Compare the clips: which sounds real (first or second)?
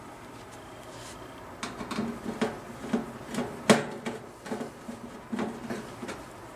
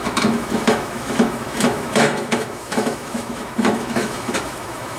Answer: first